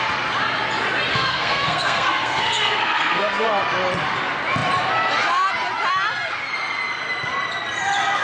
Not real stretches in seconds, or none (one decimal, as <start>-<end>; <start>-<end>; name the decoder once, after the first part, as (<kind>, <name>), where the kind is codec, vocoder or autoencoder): 1.1-3.5 (codec, SNAC)